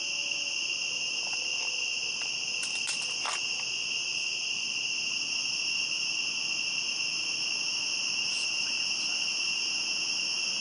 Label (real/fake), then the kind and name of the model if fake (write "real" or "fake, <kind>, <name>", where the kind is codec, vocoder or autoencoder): real